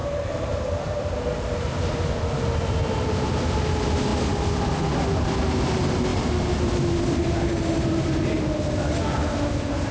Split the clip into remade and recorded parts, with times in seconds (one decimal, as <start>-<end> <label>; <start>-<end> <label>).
0.0-2.0 remade; 2.0-9.9 recorded